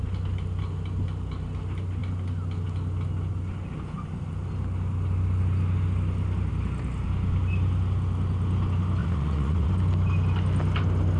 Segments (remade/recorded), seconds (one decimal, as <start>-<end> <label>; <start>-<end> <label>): 0.0-9.0 recorded; 9.0-9.7 remade; 9.7-11.2 recorded